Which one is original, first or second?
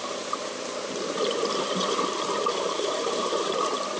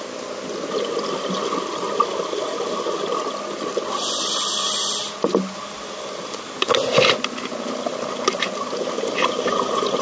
second